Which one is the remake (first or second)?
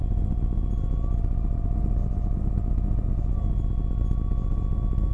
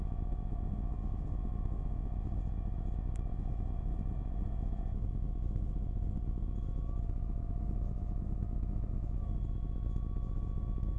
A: second